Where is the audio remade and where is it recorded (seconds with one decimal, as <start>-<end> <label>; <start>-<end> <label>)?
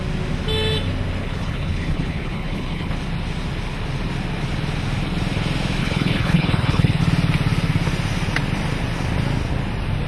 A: 0.0-1.2 recorded; 1.2-2.9 remade; 2.9-5.8 recorded; 5.8-7.0 remade; 7.0-10.1 recorded